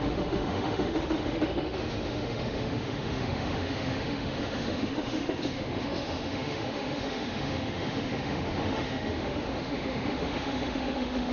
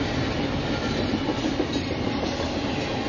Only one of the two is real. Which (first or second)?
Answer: second